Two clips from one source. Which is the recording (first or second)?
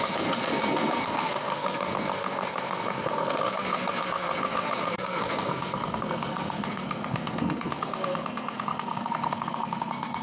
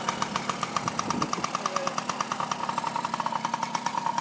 second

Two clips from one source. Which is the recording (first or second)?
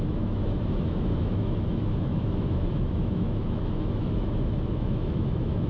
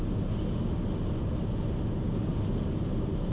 second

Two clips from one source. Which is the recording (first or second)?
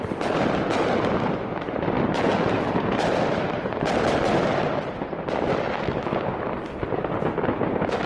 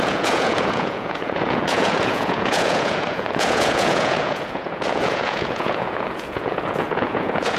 first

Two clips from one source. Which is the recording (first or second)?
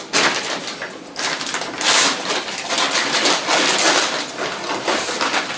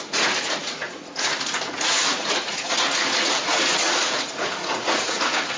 first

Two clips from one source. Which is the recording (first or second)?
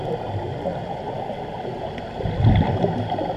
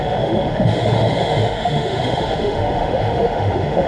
first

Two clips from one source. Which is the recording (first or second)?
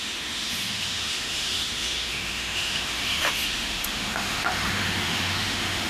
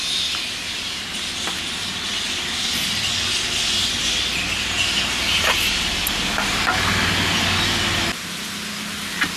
second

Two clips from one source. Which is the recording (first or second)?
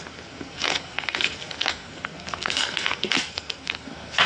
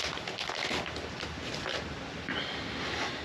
second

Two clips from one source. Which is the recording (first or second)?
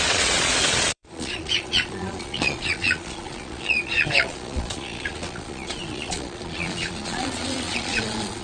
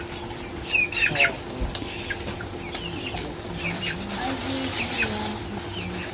second